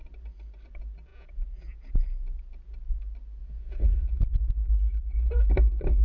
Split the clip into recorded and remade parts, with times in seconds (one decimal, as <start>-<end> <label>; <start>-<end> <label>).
0.0-1.1 recorded; 1.1-1.9 remade; 1.9-3.4 recorded; 3.4-4.4 remade; 4.4-6.0 recorded